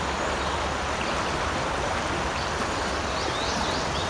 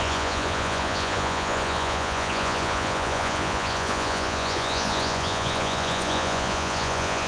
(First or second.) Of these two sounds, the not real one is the second